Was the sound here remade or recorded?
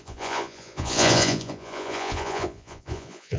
remade